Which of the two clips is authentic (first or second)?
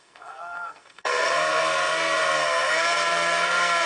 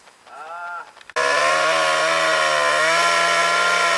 second